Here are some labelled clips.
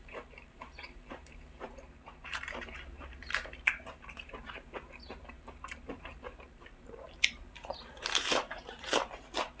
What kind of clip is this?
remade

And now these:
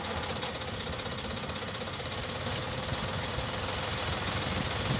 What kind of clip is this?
recorded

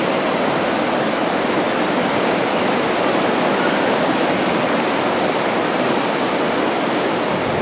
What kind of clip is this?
remade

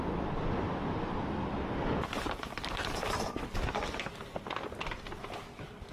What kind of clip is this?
remade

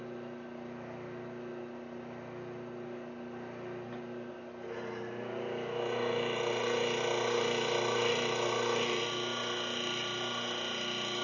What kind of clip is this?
recorded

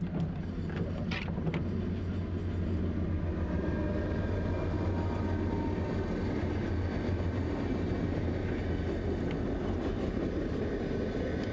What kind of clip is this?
recorded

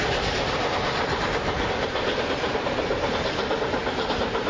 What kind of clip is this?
remade